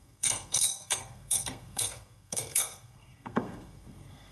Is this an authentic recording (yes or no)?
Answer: no